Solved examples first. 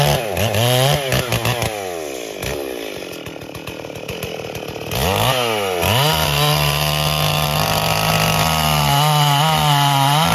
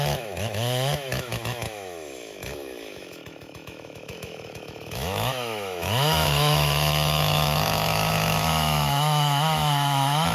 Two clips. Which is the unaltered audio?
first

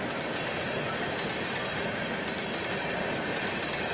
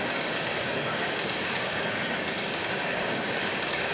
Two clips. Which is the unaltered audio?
first